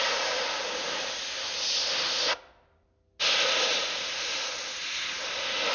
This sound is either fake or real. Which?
real